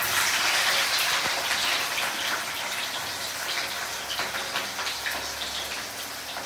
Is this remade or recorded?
recorded